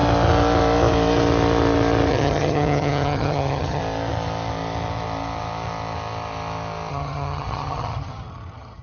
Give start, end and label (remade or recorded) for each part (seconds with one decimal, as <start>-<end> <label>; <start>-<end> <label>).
0.0-2.1 recorded; 2.1-3.8 remade; 3.8-6.9 recorded; 6.9-8.8 remade